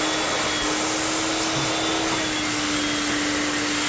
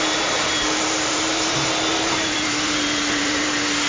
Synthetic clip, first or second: second